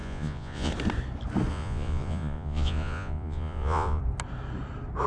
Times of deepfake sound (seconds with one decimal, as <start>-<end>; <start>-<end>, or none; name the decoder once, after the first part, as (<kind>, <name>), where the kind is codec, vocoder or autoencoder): 0.0-0.7 (vocoder, Vocos); 1.5-4.0